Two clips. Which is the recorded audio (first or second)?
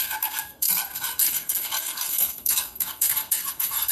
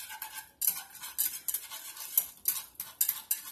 second